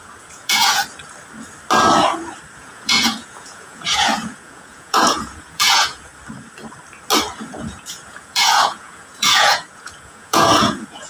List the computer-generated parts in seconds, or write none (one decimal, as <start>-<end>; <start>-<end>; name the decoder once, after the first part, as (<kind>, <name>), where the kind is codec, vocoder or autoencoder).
0.0-0.8 (vocoder, Vocos); 2.6-6.1; 7.4-11.1